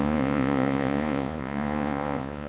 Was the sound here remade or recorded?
remade